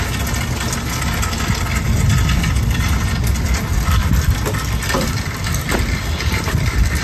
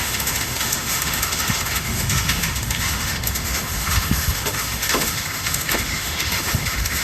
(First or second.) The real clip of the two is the first